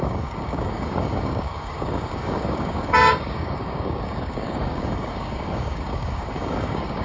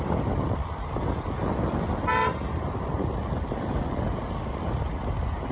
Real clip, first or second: second